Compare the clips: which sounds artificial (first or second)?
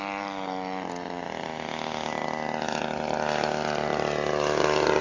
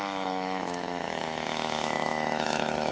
second